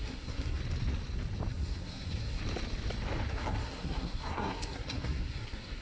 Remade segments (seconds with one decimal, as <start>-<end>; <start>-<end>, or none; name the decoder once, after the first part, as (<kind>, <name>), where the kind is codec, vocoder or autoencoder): 0.0-0.6 (codec, SNAC); 1.5-2.4; 3.3-5.8